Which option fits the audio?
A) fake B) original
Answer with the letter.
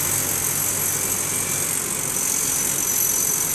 B